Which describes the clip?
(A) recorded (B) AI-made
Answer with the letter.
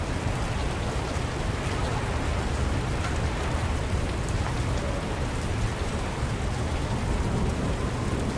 B